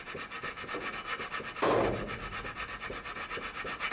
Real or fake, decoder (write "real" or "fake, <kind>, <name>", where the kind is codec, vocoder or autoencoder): real